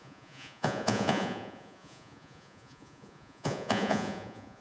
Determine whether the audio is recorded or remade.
remade